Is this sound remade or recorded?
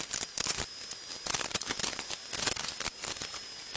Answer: recorded